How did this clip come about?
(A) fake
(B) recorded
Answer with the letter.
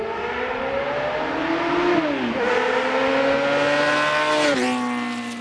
B